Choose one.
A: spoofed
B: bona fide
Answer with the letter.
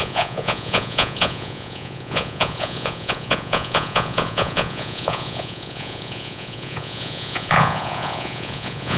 A